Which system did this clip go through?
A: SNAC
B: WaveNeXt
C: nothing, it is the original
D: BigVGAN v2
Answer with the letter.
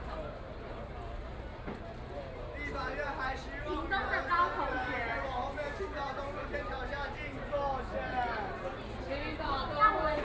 C